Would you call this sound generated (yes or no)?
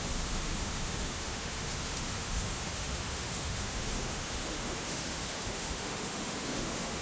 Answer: yes